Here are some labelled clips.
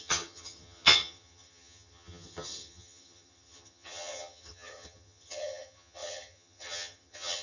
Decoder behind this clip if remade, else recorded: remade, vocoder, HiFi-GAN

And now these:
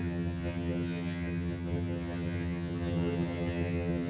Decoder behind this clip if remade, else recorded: remade, vocoder, HiFi-GAN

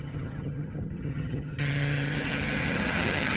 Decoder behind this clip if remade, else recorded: remade, vocoder, HiFi-GAN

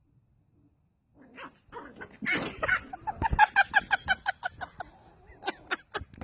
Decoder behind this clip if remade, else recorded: recorded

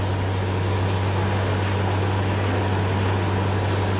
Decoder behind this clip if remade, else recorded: recorded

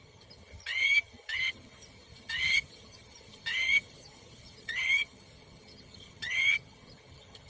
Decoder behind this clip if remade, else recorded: remade, vocoder, HiFi-GAN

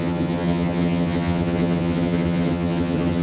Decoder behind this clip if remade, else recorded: remade, vocoder, HiFi-GAN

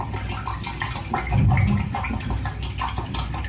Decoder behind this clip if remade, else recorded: recorded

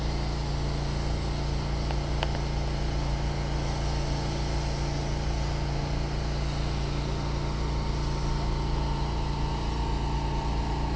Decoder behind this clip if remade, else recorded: recorded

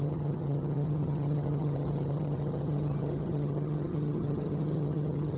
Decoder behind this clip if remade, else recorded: remade, vocoder, HiFi-GAN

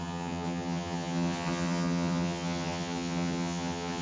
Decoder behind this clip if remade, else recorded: remade, vocoder, HiFi-GAN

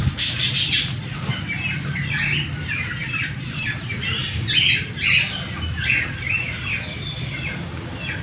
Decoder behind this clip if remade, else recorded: recorded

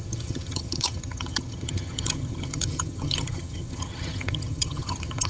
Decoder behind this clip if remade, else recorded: remade, vocoder, HiFi-GAN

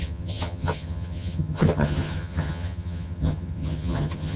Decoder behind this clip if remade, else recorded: remade, vocoder, HiFi-GAN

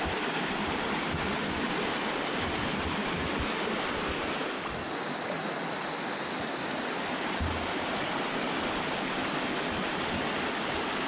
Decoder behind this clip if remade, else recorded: recorded